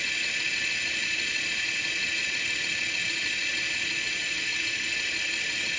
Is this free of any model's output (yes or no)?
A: yes